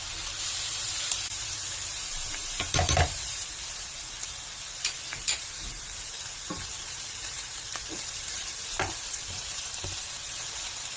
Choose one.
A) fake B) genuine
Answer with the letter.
A